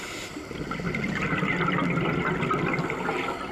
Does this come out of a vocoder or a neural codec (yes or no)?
no